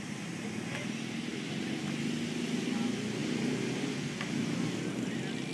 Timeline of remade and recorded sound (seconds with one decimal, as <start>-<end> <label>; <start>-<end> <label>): 0.0-5.5 recorded